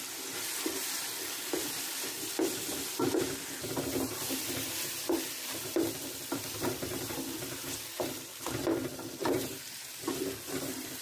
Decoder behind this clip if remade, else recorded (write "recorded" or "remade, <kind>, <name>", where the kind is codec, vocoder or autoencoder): remade, vocoder, BigVGAN v2